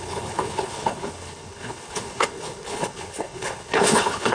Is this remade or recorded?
remade